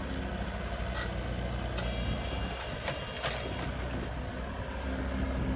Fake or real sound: real